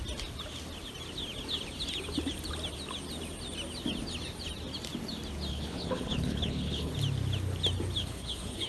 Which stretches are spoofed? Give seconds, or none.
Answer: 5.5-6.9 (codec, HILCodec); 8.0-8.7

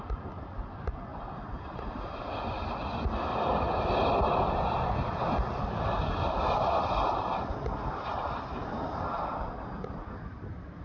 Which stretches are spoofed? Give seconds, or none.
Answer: none

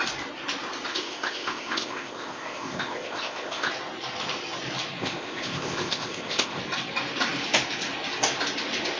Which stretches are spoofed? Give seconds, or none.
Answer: 0.9-3.7 (codec, ZipCodec); 5.0-6.6

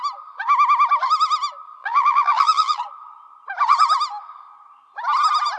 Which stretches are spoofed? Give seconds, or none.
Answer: 1.8-2.8 (vocoder, BigVGAN v2)

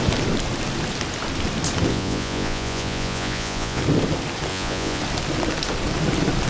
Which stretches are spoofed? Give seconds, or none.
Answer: 1.9-3.8 (vocoder, Vocos); 4.5-5.0

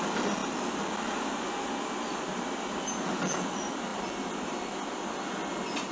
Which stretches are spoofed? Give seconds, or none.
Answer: none